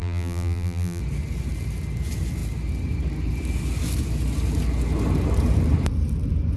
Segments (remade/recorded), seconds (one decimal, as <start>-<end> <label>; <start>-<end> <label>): 0.0-1.0 remade; 1.0-6.6 recorded